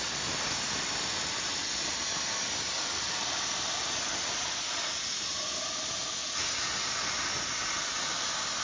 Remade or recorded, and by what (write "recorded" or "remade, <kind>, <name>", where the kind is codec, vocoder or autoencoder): recorded